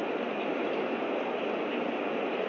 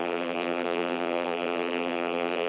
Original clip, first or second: first